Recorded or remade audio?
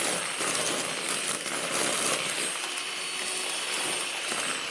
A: recorded